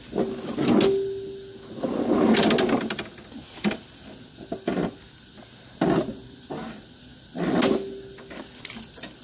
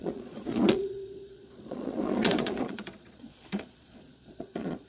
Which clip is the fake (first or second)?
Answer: second